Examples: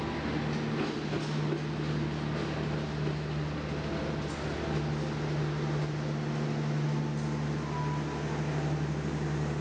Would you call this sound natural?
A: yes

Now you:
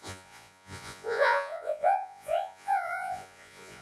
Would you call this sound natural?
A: no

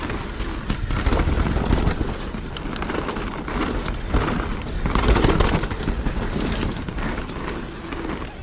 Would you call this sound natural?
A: yes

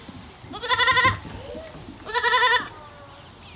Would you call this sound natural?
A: yes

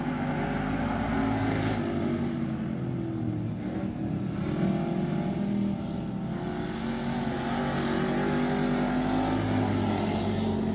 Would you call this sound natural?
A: yes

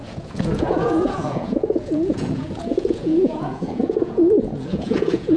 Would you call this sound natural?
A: no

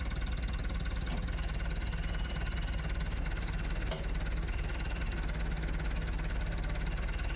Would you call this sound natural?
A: yes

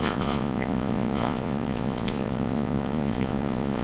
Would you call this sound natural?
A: no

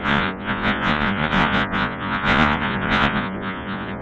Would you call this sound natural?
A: no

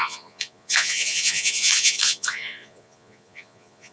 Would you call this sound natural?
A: no